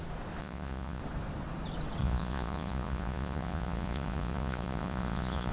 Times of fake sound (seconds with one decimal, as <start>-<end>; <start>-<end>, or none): 0.4-1.0; 2.0-5.5

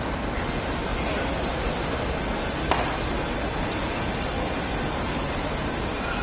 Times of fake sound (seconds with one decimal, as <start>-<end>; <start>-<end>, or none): none

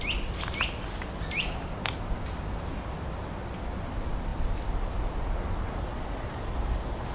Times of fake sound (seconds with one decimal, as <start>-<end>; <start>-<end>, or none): none

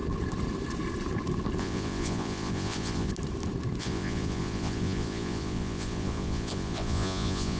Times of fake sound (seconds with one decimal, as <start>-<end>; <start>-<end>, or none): 1.6-3.1; 3.8-7.6

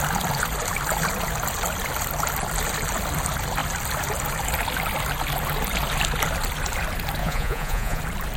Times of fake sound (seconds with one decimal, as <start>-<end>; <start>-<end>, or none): 7.2-8.0

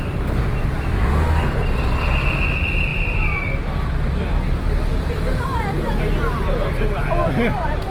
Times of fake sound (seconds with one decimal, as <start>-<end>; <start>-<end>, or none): none

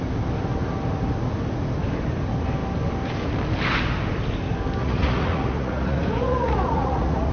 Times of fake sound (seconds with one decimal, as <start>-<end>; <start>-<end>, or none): 4.8-7.3